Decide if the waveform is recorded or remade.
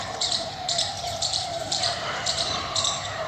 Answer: remade